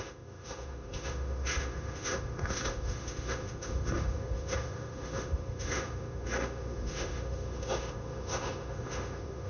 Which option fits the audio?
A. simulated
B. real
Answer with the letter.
A